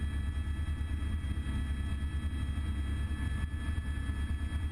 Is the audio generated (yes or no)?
no